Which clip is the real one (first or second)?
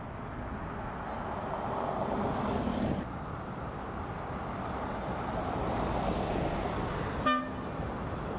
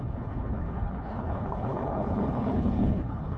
first